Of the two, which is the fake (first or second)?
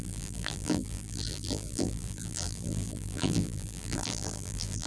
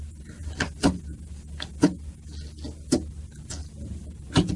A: first